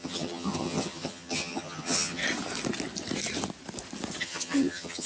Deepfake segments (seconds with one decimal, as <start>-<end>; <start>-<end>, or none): 0.0-2.2; 4.2-5.1